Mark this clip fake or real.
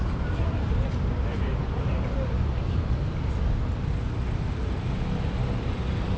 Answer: real